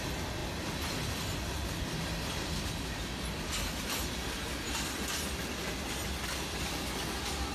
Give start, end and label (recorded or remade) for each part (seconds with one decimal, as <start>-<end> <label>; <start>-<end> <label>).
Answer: 0.0-7.5 recorded